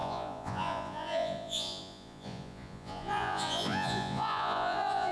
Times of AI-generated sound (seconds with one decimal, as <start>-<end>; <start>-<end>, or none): 0.0-5.1